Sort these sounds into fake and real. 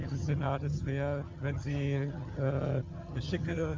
fake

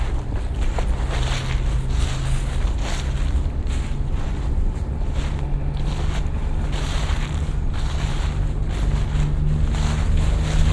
real